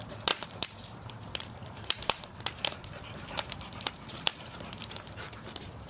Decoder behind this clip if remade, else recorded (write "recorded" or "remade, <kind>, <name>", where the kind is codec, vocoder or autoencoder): remade, vocoder, BigVGAN v2